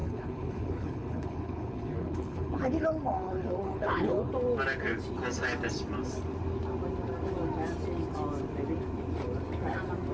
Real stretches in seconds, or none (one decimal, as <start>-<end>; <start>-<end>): 4.3-10.1